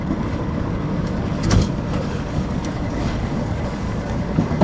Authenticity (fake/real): fake